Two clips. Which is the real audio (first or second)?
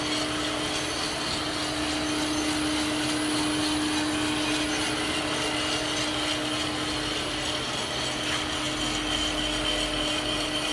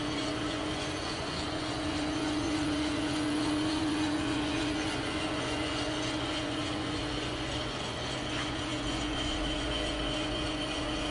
first